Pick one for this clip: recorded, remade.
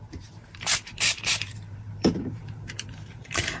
remade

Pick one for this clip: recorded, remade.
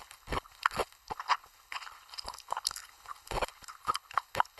remade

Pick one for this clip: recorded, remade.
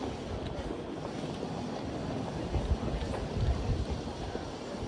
recorded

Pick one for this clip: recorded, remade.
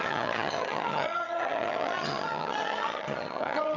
remade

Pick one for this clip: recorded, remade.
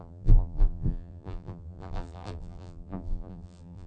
remade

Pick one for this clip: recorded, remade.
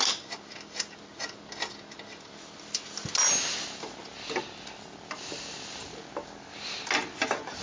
recorded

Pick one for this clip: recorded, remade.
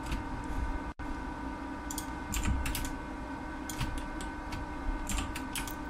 recorded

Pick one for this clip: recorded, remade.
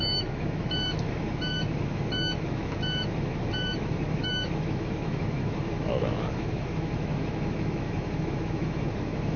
remade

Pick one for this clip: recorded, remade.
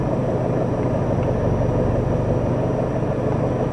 recorded